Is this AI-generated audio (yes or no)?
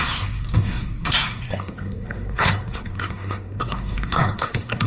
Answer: yes